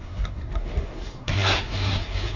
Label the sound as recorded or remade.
remade